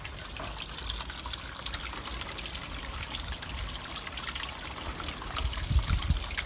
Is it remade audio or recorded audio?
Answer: recorded